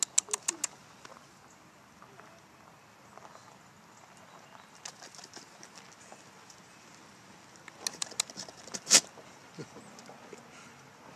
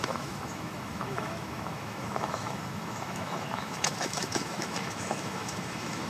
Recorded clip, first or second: first